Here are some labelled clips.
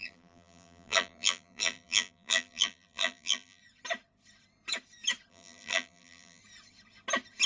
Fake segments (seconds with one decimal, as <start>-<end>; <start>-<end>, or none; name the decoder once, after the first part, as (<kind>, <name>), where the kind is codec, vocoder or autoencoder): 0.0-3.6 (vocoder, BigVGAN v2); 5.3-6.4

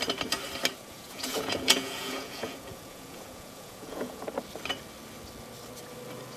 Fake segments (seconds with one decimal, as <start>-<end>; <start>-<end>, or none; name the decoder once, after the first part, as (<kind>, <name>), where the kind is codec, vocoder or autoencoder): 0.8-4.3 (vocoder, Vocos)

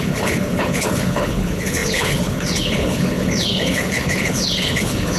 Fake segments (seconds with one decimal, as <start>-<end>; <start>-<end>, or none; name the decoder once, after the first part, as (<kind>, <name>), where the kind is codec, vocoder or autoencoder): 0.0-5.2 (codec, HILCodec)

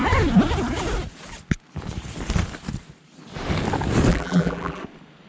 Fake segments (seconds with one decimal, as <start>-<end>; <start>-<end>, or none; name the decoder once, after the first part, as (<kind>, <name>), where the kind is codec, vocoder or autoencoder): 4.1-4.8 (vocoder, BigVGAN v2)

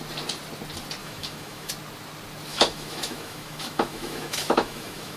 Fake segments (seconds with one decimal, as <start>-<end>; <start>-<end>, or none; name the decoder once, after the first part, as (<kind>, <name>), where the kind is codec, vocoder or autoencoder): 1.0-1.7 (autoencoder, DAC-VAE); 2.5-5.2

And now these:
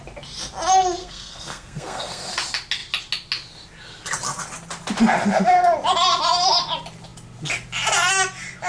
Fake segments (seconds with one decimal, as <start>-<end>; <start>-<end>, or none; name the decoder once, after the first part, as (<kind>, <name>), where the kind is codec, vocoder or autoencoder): 1.0-2.3 (codec, SNAC)

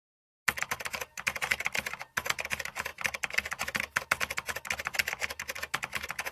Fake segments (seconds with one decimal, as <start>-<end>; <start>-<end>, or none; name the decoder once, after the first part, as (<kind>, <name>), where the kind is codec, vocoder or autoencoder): 2.9-4.0 (vocoder, BigVGAN v2)